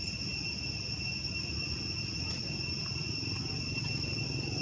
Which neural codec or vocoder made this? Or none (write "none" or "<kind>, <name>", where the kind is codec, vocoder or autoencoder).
none